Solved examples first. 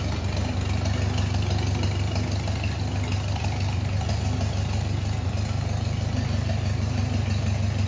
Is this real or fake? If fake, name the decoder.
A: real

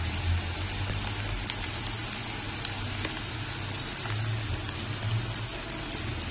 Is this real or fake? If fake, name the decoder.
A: real